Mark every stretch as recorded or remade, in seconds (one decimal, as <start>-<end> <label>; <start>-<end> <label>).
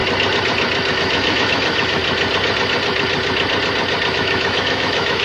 0.0-0.9 recorded; 0.9-2.0 remade; 2.0-4.1 recorded; 4.1-5.2 remade